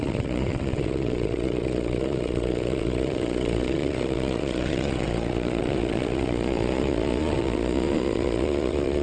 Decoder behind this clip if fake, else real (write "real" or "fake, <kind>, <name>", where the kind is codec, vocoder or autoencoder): fake, vocoder, Vocos